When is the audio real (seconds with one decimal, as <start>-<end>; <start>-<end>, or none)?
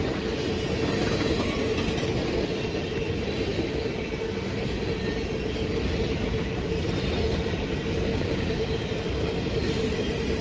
0.0-8.1; 8.8-10.4